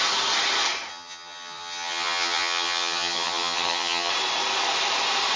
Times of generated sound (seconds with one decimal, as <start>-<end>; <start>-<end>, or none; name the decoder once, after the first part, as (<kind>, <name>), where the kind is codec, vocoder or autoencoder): 0.9-4.1 (vocoder, HiFi-GAN)

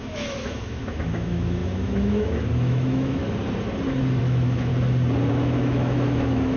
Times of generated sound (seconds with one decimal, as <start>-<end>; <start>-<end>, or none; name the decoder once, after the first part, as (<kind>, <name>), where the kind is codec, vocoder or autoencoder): 0.0-3.2 (autoencoder, DAC-VAE); 4.2-4.7; 5.3-6.6

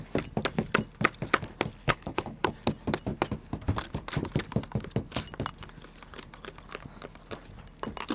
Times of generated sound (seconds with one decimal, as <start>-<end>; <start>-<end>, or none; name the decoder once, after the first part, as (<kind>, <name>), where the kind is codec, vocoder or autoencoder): 1.8-2.5 (codec, HILCodec)

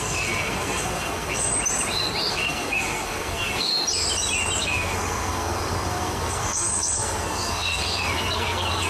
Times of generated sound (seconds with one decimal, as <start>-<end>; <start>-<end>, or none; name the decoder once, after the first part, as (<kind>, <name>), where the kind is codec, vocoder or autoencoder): 0.0-1.5 (codec, SNAC); 2.3-3.7; 4.6-8.9

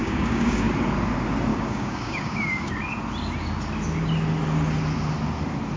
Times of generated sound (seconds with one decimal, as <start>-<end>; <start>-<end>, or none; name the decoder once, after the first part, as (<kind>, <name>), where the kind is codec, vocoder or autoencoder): 0.0-0.7 (codec, DAC); 1.5-2.7

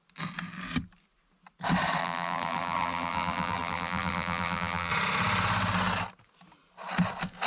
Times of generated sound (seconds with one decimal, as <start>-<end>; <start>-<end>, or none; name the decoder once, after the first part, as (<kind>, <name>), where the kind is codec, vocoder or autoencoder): 2.0-4.9 (vocoder, BigVGAN v2)